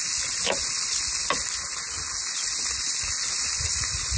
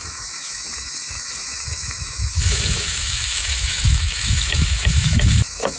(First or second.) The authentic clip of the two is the first